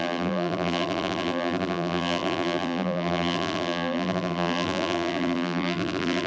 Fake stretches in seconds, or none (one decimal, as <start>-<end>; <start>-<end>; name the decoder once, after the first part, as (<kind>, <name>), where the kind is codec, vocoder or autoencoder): 0.0-6.3 (vocoder, BigVGAN v2)